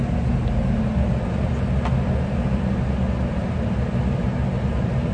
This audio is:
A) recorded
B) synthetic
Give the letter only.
A